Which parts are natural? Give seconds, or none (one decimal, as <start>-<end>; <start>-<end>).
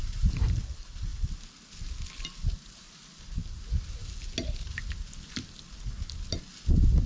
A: 0.0-7.1